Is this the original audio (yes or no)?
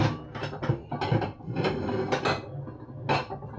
yes